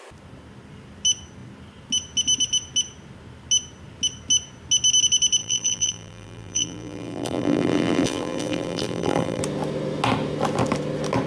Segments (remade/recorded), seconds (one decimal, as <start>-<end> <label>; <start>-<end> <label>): 0.0-5.4 recorded; 5.4-9.4 remade; 9.4-11.3 recorded